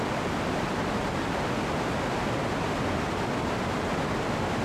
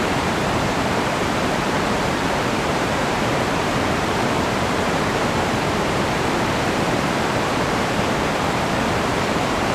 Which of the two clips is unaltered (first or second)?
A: first